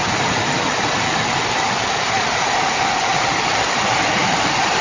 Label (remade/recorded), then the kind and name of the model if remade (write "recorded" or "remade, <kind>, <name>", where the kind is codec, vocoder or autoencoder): recorded